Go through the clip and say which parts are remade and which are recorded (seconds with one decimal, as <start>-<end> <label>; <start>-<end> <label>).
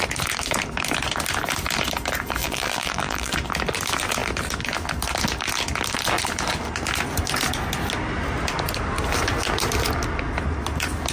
0.0-2.4 recorded; 2.4-3.3 remade; 3.3-11.1 recorded